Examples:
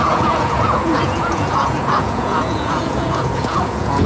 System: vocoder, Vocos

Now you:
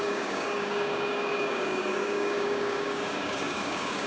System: codec, DAC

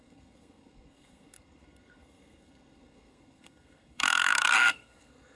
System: codec, SNAC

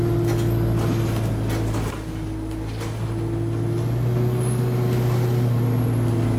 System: none